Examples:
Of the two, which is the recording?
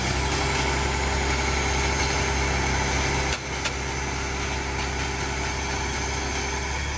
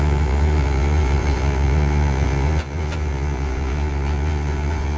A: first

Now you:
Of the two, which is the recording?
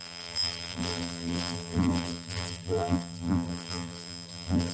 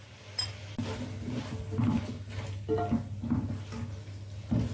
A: second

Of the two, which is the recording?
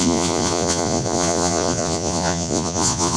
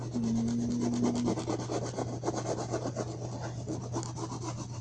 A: second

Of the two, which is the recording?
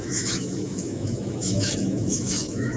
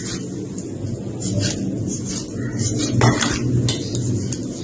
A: second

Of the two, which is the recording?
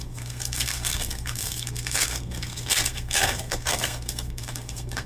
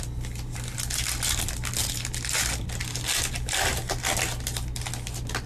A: second